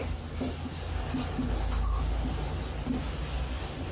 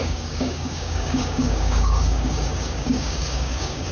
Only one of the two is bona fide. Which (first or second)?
first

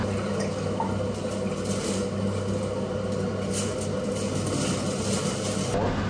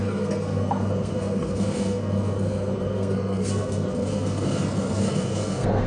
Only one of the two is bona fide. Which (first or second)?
first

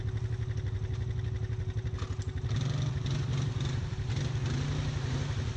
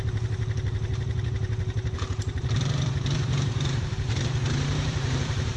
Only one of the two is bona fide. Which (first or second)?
first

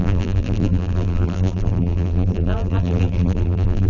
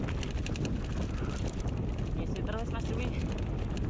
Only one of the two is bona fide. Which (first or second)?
second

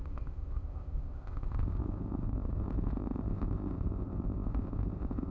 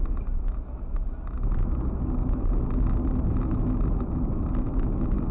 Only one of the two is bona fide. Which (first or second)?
second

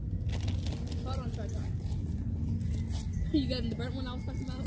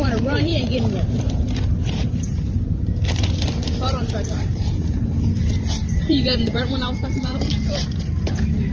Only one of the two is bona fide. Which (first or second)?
first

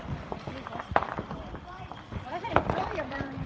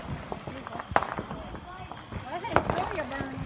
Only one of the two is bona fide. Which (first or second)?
second